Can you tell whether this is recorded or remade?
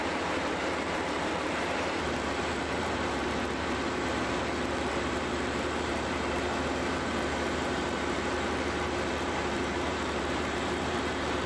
remade